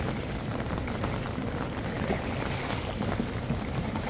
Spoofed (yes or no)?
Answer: no